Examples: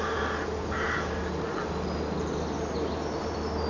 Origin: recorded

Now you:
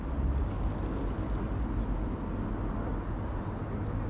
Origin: recorded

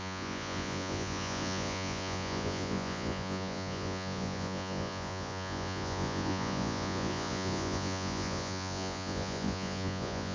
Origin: remade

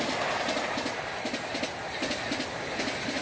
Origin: recorded